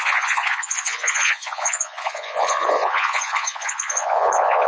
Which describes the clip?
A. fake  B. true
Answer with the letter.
A